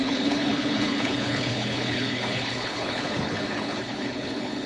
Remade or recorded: remade